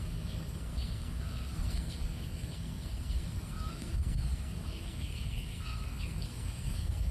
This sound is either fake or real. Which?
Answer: fake